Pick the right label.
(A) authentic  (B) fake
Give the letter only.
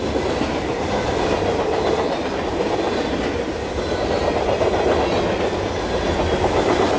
A